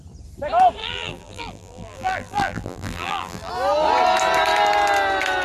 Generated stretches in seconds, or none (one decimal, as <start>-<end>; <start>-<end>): 0.8-3.5